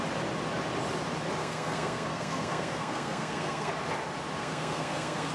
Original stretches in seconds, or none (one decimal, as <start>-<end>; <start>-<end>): 0.0-1.4; 3.7-4.4